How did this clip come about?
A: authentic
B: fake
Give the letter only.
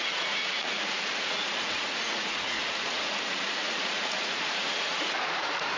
B